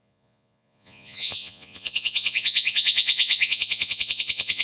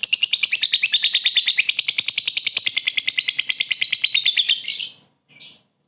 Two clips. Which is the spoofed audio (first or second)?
first